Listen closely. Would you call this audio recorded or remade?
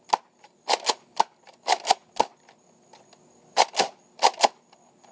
recorded